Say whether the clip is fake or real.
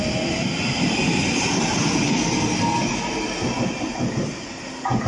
real